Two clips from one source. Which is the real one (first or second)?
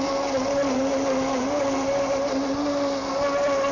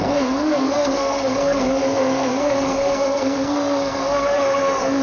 first